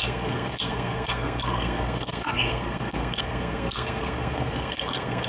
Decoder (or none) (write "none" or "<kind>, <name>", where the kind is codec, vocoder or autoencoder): codec, SNAC